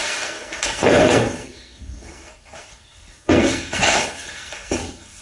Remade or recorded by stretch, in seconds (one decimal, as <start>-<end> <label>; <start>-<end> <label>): 0.0-5.2 remade